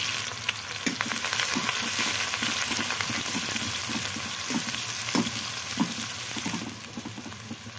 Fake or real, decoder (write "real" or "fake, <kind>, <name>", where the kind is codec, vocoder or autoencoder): real